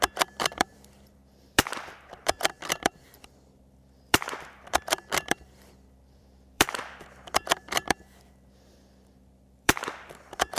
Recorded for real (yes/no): no